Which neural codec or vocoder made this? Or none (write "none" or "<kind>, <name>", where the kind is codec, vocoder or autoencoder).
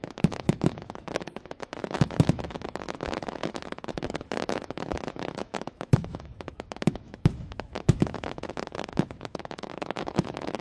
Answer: autoencoder, DAC-VAE